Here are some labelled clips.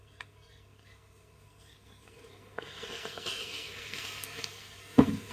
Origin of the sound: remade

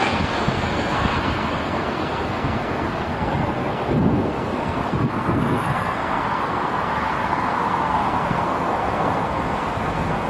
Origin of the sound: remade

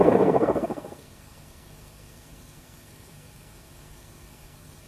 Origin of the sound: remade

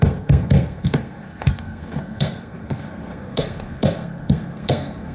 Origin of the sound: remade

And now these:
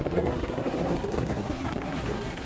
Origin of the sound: remade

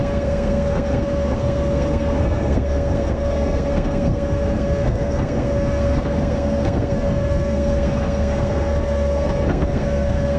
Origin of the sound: remade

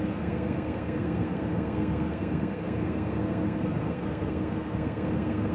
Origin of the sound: remade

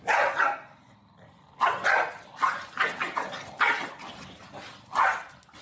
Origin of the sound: recorded